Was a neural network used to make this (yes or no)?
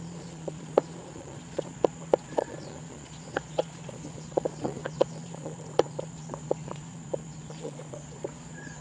yes